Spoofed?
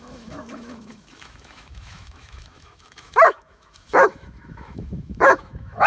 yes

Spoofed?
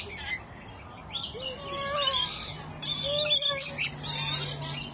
no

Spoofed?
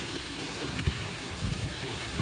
yes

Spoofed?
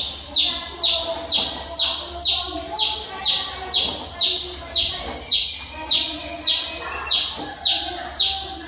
no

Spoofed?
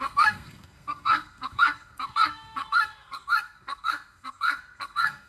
yes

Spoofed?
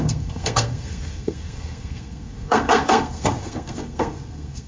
yes